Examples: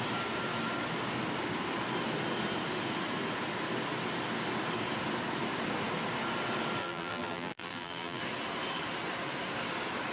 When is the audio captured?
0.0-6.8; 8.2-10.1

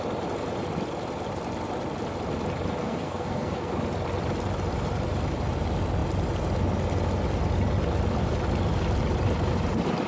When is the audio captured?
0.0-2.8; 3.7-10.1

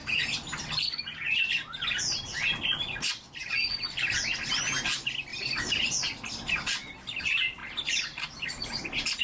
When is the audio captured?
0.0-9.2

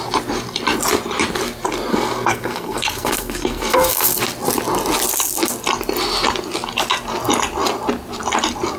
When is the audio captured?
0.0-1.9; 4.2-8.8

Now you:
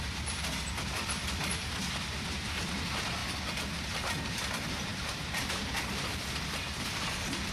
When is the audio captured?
3.2-4.3